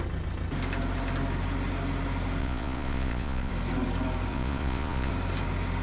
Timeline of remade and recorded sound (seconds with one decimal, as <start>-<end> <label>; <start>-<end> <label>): 0.0-2.4 recorded; 2.4-3.5 remade; 3.5-4.3 recorded; 4.3-5.1 remade; 5.1-5.8 recorded